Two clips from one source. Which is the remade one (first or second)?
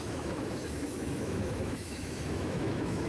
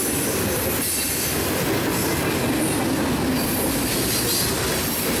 first